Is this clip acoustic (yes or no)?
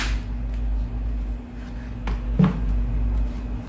yes